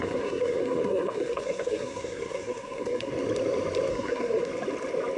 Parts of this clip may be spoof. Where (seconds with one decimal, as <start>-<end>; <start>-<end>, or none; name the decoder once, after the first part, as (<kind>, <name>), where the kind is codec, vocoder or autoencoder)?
0.0-3.1 (codec, SNAC); 3.9-4.5